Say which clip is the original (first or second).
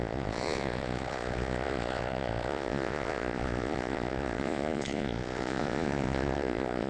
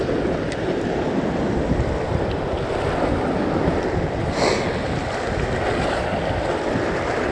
second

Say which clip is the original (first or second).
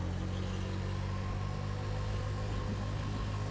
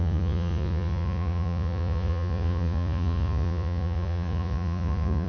first